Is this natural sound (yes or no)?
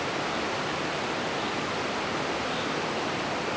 yes